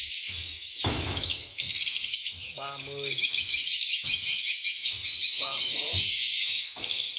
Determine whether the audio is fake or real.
fake